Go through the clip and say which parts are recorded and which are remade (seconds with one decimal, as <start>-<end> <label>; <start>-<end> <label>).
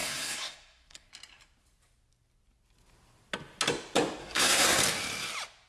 0.0-1.1 remade; 1.1-4.2 recorded; 4.2-4.8 remade; 4.8-5.7 recorded